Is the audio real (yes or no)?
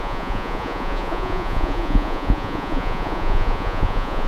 no